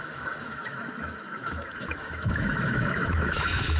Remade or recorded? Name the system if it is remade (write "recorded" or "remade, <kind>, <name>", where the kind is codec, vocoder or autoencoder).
remade, autoencoder, DAC-VAE